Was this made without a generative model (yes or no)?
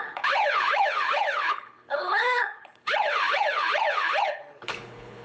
no